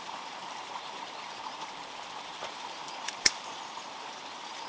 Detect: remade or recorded remade